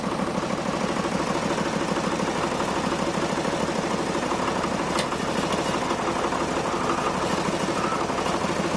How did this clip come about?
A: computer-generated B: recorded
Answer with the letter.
B